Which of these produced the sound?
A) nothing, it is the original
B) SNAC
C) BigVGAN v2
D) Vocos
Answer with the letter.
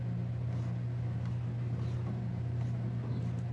A